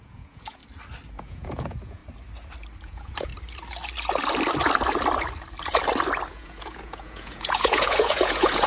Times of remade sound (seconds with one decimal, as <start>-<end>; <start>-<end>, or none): 0.0-0.6; 1.2-2.0; 2.8-3.3; 6.3-8.7